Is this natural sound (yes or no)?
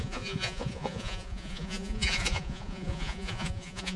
no